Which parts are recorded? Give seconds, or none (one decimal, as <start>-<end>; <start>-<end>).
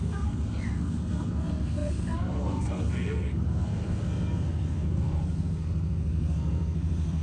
none